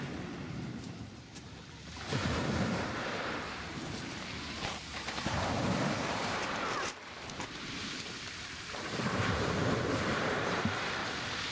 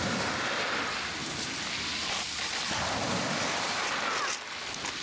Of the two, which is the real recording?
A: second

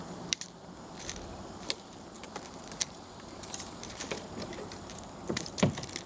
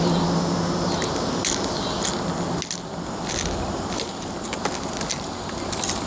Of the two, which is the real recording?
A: second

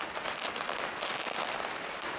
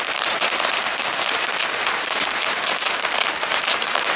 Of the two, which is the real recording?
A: first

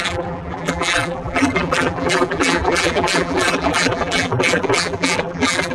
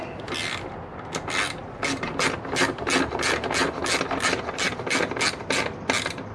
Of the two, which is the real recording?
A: second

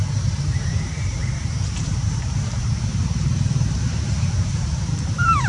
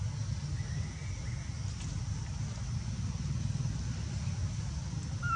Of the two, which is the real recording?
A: second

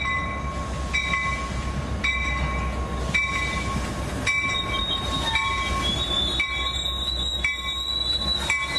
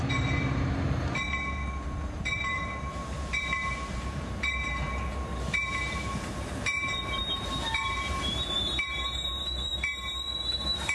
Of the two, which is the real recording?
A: first